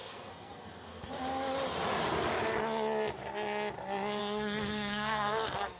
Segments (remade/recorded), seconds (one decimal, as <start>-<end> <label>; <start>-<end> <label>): 0.0-1.1 remade; 1.1-4.2 recorded; 4.2-5.8 remade